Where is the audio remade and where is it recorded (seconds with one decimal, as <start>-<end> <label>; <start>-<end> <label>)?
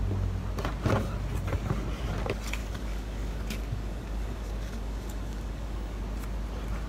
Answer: 0.0-2.6 recorded; 2.6-6.0 remade; 6.0-6.9 recorded